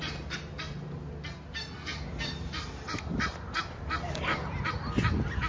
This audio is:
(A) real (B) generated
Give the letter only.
A